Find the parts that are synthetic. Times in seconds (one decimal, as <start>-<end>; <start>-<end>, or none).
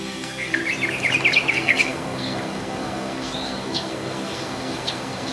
0.0-0.6; 1.5-5.3